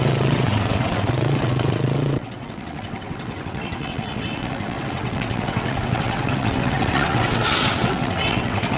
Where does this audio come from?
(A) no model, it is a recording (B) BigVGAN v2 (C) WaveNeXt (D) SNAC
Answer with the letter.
C